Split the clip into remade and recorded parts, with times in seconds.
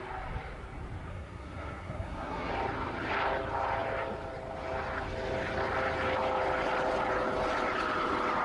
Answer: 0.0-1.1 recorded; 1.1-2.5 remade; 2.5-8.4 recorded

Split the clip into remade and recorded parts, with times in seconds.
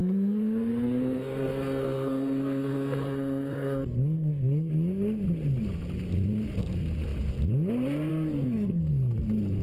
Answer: 0.0-4.7 remade; 4.7-8.1 recorded; 8.1-8.9 remade; 8.9-9.6 recorded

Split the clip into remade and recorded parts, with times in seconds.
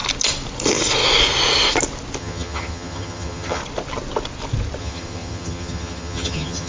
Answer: 0.0-2.2 recorded; 2.2-3.6 remade; 3.6-4.8 recorded; 4.8-6.7 remade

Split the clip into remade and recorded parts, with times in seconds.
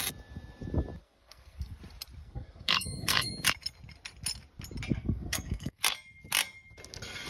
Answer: 0.0-1.0 recorded; 1.0-1.8 remade; 1.8-2.2 recorded; 2.2-3.3 remade; 3.3-4.9 recorded; 4.9-5.8 remade; 5.8-7.3 recorded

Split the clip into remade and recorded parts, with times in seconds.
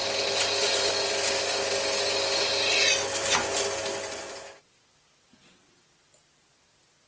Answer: 0.0-7.1 recorded